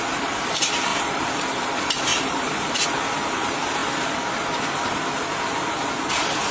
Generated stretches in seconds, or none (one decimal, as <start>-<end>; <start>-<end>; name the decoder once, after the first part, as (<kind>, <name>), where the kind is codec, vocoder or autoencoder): 0.9-1.6 (vocoder, BigVGAN v2); 2.1-2.9